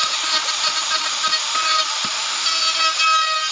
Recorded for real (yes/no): yes